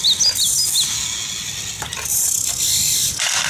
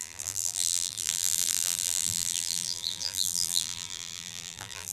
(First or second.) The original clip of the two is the first